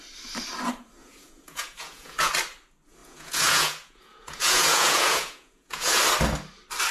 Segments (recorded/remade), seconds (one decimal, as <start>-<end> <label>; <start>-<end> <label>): 0.0-1.0 recorded; 1.0-2.3 remade; 2.3-3.0 recorded; 3.0-6.0 remade; 6.0-6.9 recorded